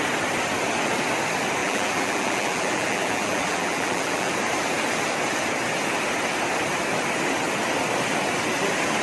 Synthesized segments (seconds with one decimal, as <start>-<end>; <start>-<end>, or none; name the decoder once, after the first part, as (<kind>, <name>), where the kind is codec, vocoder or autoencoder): 1.6-4.3 (vocoder, BigVGAN v2)